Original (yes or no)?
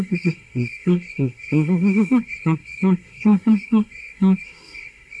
no